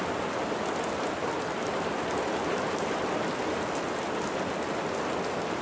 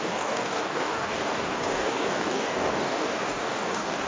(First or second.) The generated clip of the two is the second